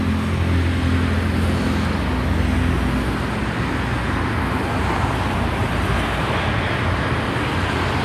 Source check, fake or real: real